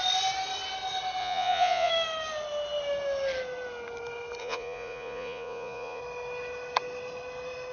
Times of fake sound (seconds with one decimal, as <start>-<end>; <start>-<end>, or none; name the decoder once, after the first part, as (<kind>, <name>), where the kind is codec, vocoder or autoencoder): 1.2-1.9 (vocoder, Vocos); 4.4-6.0